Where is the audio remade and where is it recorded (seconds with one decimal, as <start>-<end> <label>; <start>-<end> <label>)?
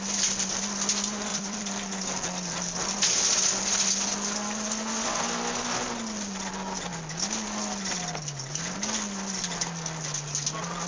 0.0-1.3 recorded; 1.3-2.0 remade; 2.0-10.9 recorded